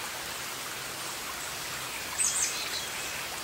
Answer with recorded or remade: recorded